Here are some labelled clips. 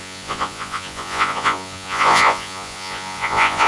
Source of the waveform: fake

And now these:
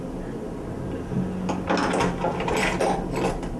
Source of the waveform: real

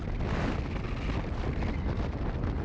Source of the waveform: real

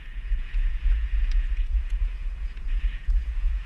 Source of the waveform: fake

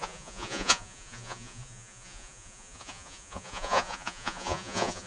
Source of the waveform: fake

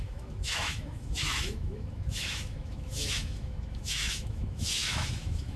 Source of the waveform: fake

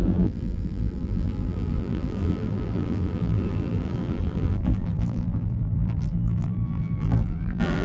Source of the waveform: fake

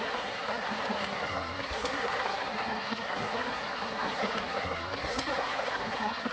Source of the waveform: fake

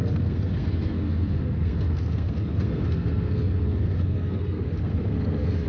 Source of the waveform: fake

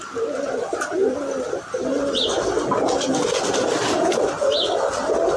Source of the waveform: real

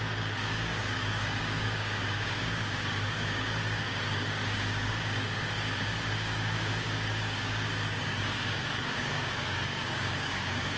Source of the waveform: fake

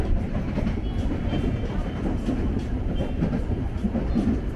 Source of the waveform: fake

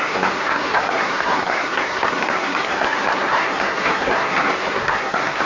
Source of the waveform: fake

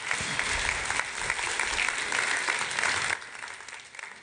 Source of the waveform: real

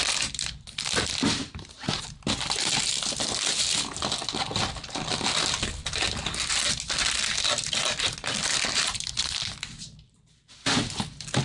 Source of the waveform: real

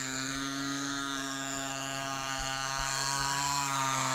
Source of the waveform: fake